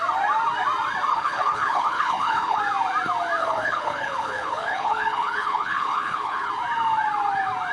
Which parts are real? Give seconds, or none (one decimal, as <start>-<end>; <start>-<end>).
0.0-1.1; 2.6-3.4; 6.5-7.7